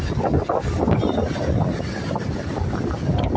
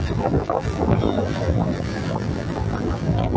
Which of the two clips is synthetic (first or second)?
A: second